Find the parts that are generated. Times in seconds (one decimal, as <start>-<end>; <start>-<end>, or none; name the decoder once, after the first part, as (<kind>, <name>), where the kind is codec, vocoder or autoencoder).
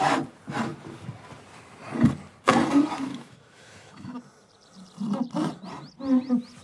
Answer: 3.1-4.2 (autoencoder, DAC-VAE)